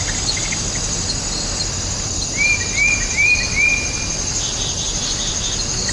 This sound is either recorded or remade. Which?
recorded